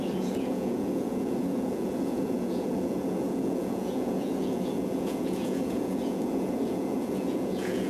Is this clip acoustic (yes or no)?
no